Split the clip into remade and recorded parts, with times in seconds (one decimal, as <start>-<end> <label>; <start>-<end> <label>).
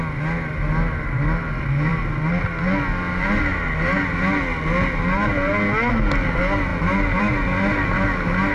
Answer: 0.0-8.5 recorded